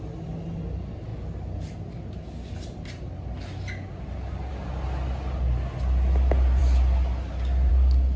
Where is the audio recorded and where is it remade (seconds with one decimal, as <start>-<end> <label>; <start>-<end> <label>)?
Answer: 0.0-8.2 recorded